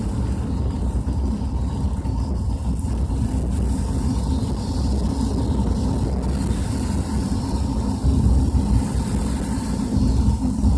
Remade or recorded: recorded